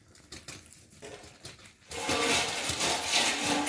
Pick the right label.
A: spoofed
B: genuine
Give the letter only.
B